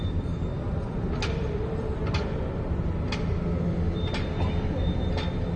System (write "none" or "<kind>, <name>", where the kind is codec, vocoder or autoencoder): none